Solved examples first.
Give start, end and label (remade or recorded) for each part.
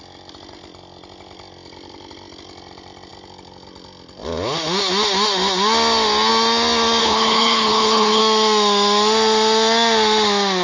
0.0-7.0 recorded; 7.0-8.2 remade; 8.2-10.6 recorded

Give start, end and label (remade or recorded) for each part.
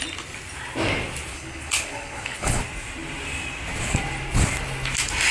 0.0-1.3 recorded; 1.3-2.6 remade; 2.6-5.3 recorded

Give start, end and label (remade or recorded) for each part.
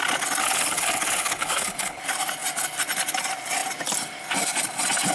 0.0-0.4 recorded; 0.4-2.0 remade; 2.0-5.1 recorded